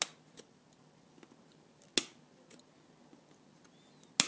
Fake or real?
real